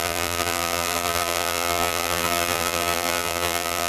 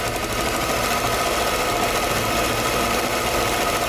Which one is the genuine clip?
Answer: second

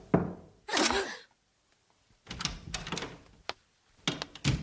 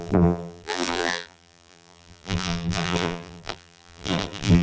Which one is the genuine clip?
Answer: first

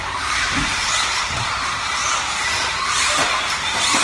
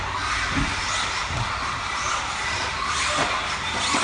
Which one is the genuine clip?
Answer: second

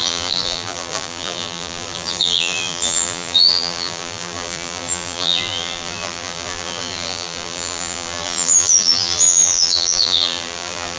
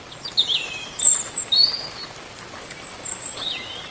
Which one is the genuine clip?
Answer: second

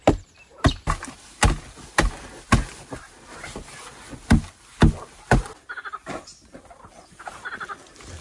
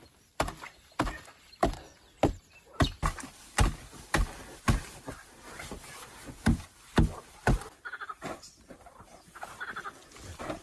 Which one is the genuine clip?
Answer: first